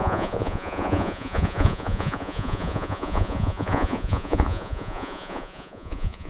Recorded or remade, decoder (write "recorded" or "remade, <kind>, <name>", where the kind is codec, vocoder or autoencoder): remade, vocoder, Vocos